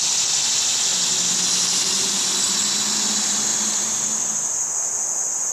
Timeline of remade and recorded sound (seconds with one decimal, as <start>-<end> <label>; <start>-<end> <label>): 0.0-5.5 recorded